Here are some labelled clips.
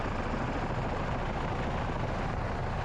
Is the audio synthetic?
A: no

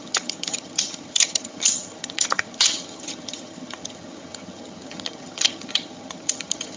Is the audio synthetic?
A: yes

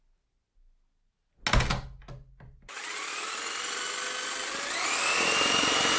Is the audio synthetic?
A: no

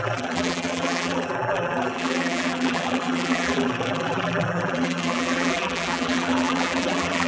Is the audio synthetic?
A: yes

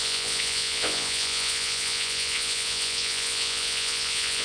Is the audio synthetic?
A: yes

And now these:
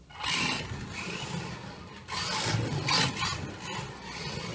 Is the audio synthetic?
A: no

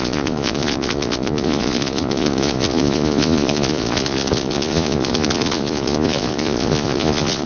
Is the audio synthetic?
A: yes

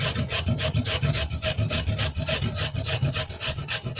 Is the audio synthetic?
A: no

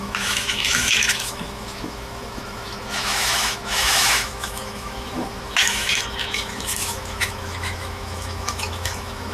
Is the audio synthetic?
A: yes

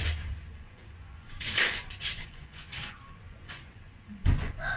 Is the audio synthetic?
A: yes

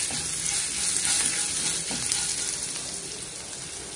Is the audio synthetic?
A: no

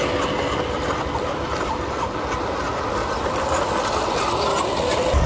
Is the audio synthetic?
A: no